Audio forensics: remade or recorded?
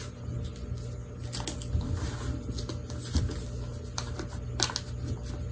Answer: recorded